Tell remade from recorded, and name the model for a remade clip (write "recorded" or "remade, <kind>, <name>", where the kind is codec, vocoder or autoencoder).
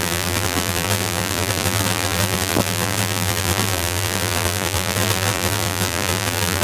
remade, vocoder, BigVGAN v2